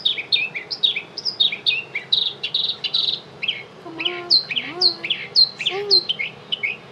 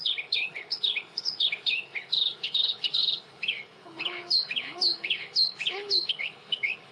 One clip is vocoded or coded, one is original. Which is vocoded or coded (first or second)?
second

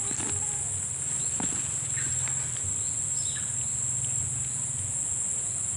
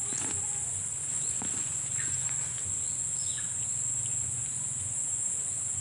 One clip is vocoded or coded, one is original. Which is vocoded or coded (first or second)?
second